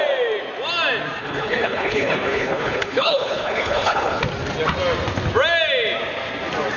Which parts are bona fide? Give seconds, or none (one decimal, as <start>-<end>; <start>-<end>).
0.0-1.2; 4.2-6.8